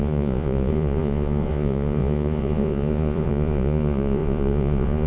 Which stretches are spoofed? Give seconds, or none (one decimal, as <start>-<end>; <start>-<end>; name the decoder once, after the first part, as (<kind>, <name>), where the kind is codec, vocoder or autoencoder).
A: 0.0-5.1 (vocoder, Vocos)